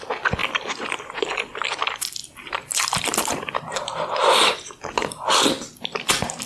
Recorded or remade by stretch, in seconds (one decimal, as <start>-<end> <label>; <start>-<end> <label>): 0.0-0.4 recorded; 0.4-1.4 remade; 1.4-2.2 recorded; 2.2-6.1 remade; 6.1-6.5 recorded